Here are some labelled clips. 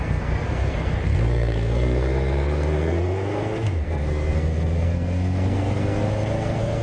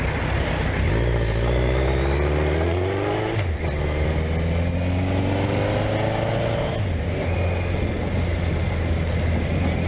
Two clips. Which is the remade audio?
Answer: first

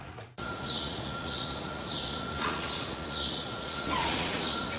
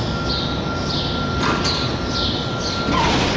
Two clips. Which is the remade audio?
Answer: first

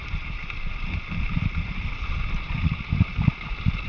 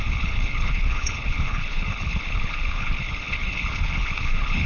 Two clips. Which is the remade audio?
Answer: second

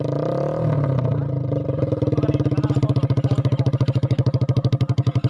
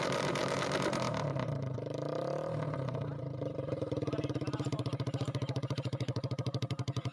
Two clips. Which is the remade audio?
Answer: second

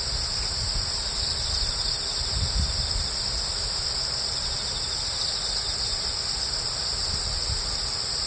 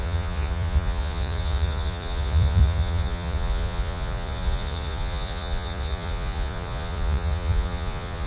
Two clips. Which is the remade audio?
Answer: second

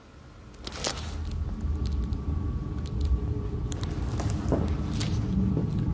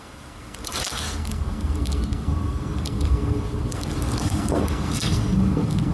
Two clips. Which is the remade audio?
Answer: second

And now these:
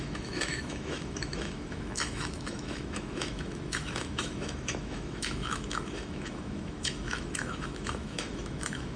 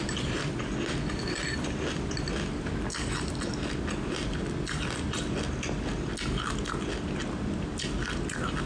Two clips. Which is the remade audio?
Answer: first